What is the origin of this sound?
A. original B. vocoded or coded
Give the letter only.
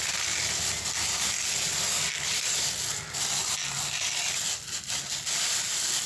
A